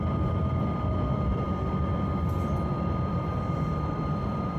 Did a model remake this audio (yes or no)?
yes